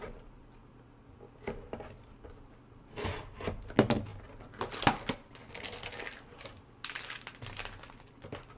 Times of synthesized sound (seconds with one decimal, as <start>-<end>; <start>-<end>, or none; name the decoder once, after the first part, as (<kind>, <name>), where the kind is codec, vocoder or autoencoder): none